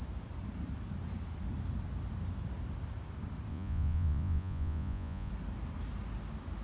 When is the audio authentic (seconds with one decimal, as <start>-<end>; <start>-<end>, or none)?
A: 0.0-3.5; 5.3-6.6